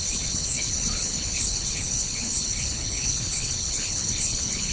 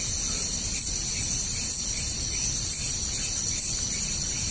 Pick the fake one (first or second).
first